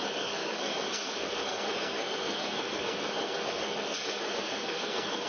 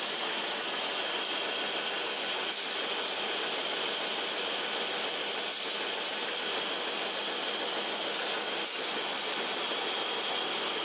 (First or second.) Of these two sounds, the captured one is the second